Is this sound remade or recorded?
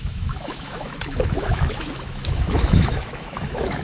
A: remade